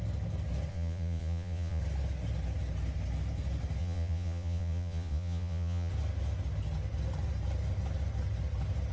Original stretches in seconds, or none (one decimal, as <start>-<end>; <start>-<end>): 0.0-0.7; 1.8-3.8; 5.9-8.9